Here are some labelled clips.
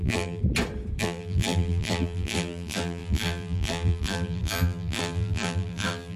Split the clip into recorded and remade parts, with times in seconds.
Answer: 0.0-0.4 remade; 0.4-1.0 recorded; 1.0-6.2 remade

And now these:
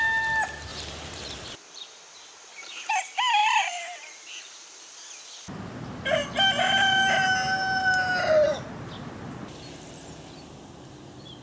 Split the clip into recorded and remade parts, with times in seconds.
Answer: 0.0-0.7 recorded; 0.7-2.9 remade; 2.9-3.4 recorded; 3.4-4.8 remade; 4.8-11.4 recorded

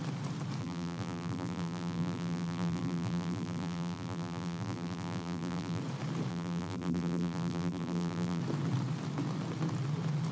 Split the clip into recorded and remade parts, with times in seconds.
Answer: 0.0-0.6 recorded; 0.6-5.8 remade; 5.8-6.3 recorded; 6.3-8.4 remade; 8.4-10.3 recorded

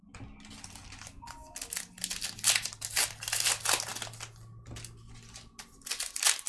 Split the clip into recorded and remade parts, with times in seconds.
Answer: 0.0-6.5 recorded

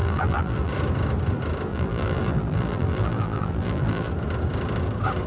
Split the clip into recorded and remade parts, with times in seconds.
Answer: 0.0-0.7 remade; 0.7-1.7 recorded; 1.7-4.1 remade; 4.1-5.3 recorded

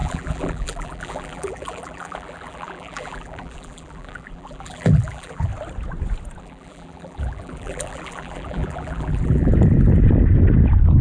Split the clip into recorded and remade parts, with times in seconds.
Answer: 0.0-5.5 remade; 5.5-6.4 recorded; 6.4-9.5 remade; 9.5-11.0 recorded